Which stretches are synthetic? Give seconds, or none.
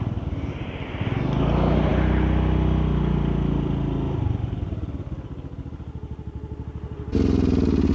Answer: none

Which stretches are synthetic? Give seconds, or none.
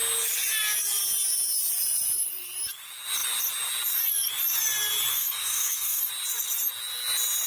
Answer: 5.1-6.1 (autoencoder, DAC-VAE)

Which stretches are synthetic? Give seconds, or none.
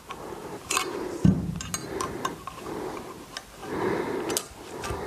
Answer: 0.4-1.1 (vocoder, BigVGAN v2); 1.8-2.9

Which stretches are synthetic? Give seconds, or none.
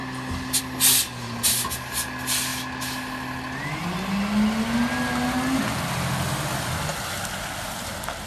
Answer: none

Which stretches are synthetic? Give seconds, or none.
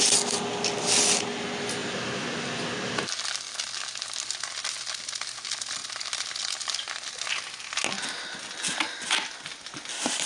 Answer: none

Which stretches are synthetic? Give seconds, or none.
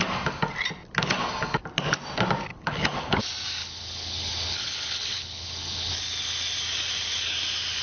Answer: 2.5-3.2 (codec, HILCodec); 3.6-5.9